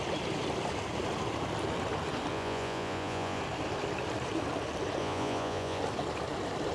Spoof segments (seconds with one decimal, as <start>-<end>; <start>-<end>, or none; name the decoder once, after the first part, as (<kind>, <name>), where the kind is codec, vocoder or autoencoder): 2.3-3.4 (vocoder, Vocos); 5.0-5.8